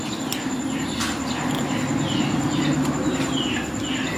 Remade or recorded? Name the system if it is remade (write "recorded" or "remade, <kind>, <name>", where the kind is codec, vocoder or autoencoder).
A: recorded